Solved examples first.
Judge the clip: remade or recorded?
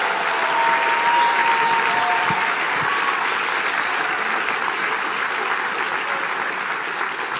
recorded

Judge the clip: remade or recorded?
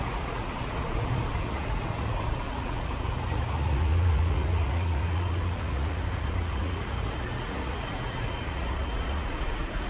remade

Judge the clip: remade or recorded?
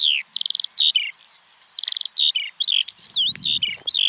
recorded